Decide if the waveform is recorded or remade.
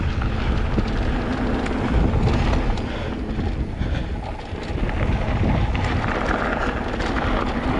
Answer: recorded